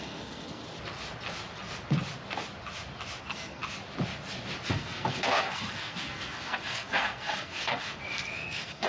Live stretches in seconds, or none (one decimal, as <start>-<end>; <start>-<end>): 0.6-3.2; 3.6-4.7